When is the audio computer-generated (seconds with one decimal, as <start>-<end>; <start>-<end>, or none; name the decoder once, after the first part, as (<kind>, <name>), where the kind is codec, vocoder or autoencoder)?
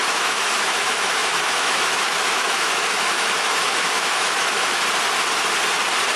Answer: 0.0-4.8 (autoencoder, DAC-VAE)